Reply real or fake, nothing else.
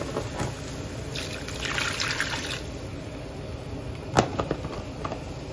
real